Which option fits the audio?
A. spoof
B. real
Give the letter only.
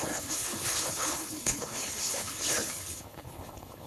A